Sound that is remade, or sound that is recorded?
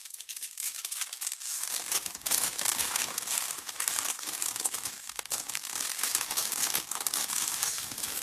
remade